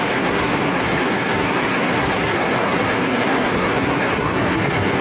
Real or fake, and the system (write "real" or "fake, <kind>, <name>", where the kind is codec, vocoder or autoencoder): fake, codec, SNAC